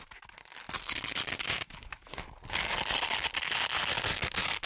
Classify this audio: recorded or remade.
recorded